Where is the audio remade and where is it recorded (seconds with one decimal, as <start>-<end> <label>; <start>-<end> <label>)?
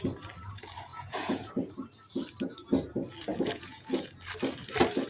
0.0-0.9 recorded; 0.9-1.5 remade; 1.5-3.3 recorded; 3.3-4.2 remade; 4.2-5.1 recorded